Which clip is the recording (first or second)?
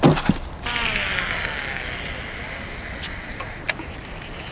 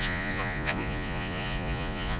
first